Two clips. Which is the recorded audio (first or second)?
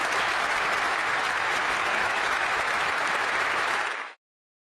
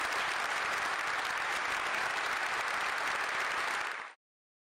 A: second